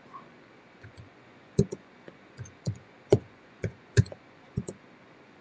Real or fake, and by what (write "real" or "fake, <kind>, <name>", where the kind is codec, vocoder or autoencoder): fake, vocoder, Vocos